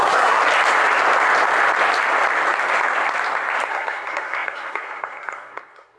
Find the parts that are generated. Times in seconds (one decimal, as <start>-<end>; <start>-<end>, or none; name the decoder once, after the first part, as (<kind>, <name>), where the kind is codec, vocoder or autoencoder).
0.0-0.4 (codec, SNAC); 3.7-6.0